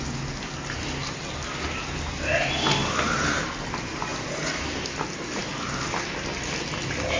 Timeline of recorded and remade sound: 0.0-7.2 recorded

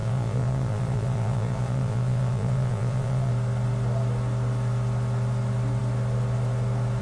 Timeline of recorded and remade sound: 0.0-3.3 remade; 3.3-7.0 recorded

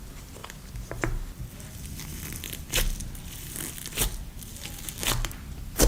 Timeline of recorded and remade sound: 0.0-5.9 recorded

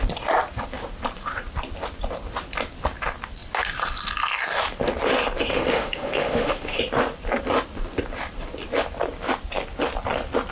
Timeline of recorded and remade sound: 0.0-5.5 recorded; 5.5-6.8 remade; 6.8-10.5 recorded

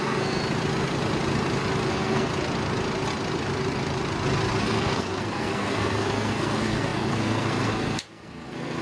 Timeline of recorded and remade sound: 0.0-0.4 remade; 0.4-1.9 recorded; 1.9-2.3 remade; 2.3-4.6 recorded; 4.6-8.8 remade